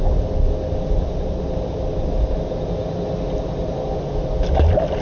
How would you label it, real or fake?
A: real